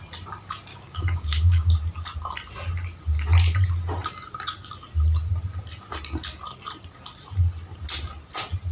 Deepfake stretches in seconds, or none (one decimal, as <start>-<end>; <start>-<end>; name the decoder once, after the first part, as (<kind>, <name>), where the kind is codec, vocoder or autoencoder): 0.7-1.7 (codec, DAC)